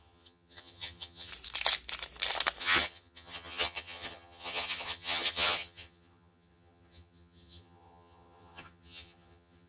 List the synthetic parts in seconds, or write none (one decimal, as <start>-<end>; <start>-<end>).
0.0-1.3; 2.6-9.7